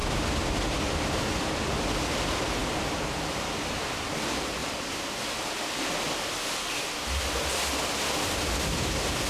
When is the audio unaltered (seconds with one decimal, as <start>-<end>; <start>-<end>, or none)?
1.7-2.6; 3.6-4.6; 5.2-9.3